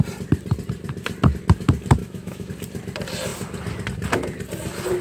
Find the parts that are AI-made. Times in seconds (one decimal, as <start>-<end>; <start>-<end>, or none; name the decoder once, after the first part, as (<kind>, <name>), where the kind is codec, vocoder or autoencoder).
2.0-2.5 (autoencoder, DAC-VAE)